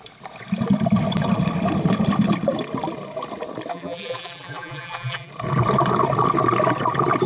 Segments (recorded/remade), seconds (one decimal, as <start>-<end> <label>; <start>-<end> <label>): 0.0-3.7 recorded; 3.7-5.3 remade; 5.3-7.3 recorded